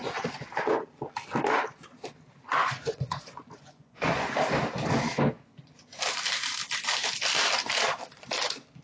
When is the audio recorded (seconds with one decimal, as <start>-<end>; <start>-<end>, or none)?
0.0-2.6; 4.4-8.8